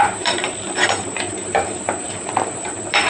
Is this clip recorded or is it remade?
remade